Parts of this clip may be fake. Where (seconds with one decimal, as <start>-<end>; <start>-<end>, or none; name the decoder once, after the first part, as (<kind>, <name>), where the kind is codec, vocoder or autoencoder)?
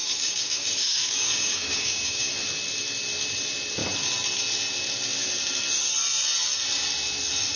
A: 0.0-2.3 (codec, DAC)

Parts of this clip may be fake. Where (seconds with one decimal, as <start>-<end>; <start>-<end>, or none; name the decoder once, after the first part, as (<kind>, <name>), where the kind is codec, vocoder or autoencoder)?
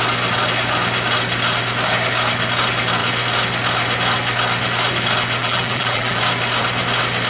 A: 5.4-6.2 (vocoder, BigVGAN v2)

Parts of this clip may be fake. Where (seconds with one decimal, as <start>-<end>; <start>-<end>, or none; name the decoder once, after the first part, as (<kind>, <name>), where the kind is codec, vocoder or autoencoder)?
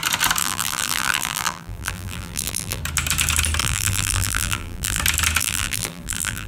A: 0.4-2.8 (vocoder, BigVGAN v2); 3.6-5.0; 5.4-6.5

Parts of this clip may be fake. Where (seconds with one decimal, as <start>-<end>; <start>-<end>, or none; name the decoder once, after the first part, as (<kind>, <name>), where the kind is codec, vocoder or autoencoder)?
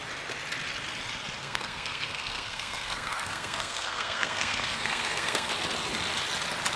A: 1.4-5.5 (codec, SNAC)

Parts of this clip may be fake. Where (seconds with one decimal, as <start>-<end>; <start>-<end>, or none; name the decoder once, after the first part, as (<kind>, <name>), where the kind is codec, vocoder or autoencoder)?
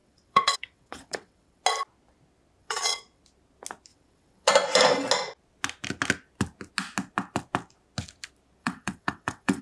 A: 0.0-1.6 (vocoder, WaveNeXt); 2.6-3.2; 3.9-4.5; 8.6-9.6